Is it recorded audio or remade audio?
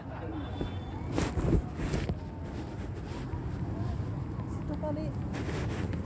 recorded